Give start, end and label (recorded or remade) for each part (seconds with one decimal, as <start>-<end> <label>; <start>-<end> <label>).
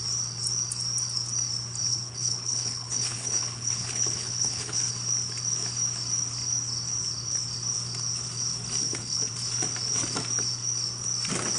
0.0-1.9 recorded; 1.9-4.9 remade; 4.9-8.8 recorded; 8.8-9.3 remade; 9.3-11.6 recorded